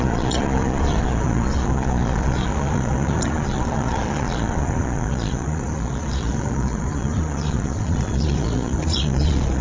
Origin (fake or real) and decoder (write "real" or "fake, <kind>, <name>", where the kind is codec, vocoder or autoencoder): fake, vocoder, Vocos